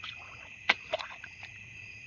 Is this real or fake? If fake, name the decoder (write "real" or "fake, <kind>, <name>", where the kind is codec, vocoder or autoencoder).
fake, vocoder, Vocos